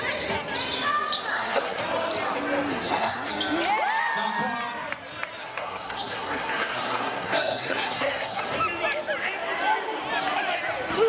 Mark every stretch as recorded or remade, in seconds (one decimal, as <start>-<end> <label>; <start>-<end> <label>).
0.0-1.3 recorded; 1.3-1.8 remade; 1.8-2.7 recorded; 2.7-3.3 remade; 3.3-5.5 recorded; 5.5-8.4 remade; 8.4-11.1 recorded